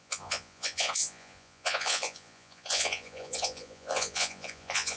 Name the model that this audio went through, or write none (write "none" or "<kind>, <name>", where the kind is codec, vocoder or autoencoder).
vocoder, Vocos